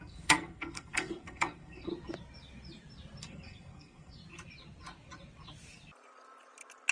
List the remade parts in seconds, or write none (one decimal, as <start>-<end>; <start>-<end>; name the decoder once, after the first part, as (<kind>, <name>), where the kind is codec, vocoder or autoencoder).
0.0-1.9 (codec, SNAC); 3.2-4.2